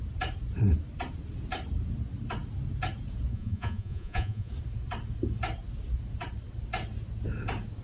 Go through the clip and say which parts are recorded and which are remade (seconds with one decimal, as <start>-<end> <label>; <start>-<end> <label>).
0.0-3.3 recorded; 3.3-4.5 remade; 4.5-7.8 recorded